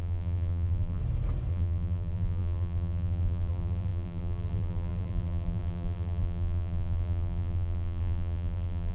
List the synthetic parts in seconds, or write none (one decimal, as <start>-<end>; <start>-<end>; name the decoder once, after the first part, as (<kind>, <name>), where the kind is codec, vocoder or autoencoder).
0.0-1.0 (vocoder, BigVGAN v2); 1.5-8.9